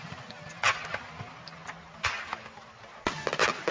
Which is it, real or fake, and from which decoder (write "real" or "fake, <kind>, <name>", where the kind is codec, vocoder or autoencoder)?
real